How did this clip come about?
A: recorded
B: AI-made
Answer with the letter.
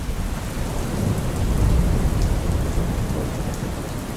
A